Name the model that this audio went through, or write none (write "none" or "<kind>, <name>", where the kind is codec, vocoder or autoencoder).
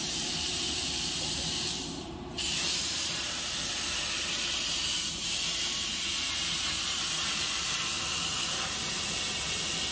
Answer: vocoder, BigVGAN v2